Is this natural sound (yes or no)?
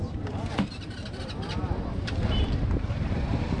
no